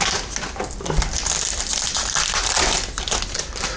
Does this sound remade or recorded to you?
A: recorded